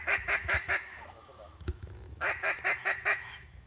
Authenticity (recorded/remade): remade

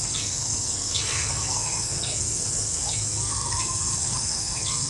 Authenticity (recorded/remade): remade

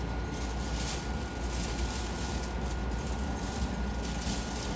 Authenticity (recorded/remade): recorded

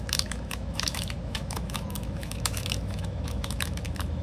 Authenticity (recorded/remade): remade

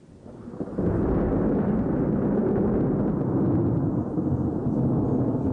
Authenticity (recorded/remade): recorded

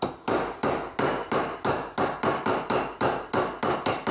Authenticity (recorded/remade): recorded